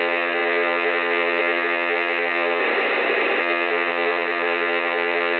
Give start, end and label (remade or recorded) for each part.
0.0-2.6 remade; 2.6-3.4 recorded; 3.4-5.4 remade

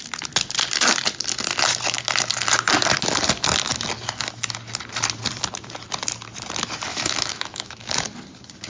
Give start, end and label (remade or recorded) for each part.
0.0-6.9 recorded; 6.9-7.9 remade; 7.9-8.7 recorded

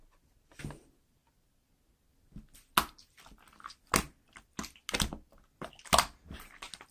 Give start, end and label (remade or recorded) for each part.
0.0-6.9 recorded

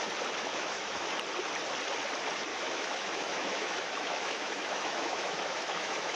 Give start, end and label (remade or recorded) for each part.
0.0-0.5 recorded; 0.5-1.1 remade; 1.1-2.5 recorded; 2.5-6.2 remade

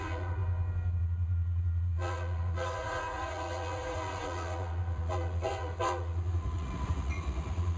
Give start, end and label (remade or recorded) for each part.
0.0-0.4 remade; 0.4-1.0 recorded; 1.0-7.8 remade

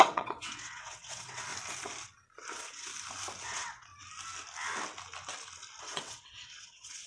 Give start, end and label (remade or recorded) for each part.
0.0-1.5 remade; 1.5-2.5 recorded; 2.5-2.9 remade; 2.9-3.4 recorded; 3.4-3.9 remade; 3.9-5.8 recorded; 5.8-7.1 remade

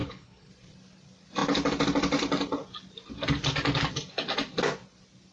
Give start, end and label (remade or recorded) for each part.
0.0-0.5 remade; 0.5-5.3 recorded

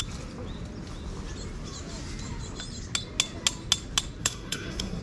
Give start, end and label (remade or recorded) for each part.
0.0-4.2 recorded; 4.2-5.0 remade